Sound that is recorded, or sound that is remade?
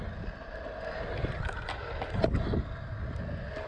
recorded